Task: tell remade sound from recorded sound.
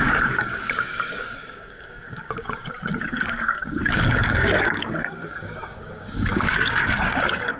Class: remade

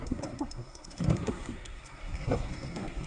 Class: remade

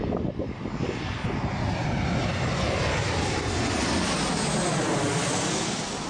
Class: recorded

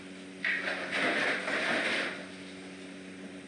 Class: recorded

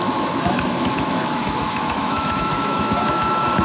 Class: remade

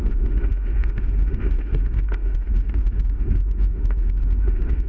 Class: remade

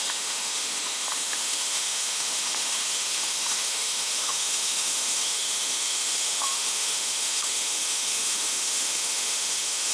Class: remade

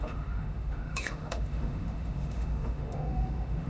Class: remade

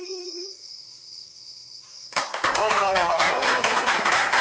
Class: remade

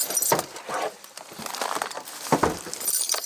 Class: recorded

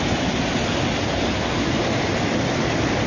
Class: recorded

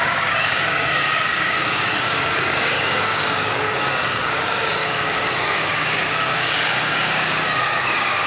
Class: remade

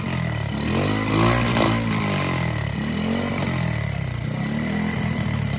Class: recorded